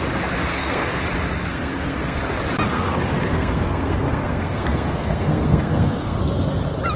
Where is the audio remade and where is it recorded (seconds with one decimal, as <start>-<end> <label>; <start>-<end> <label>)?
0.0-0.5 recorded; 0.5-1.0 remade; 1.0-1.5 recorded; 1.5-2.2 remade; 2.2-2.7 recorded; 2.7-6.2 remade; 6.2-7.0 recorded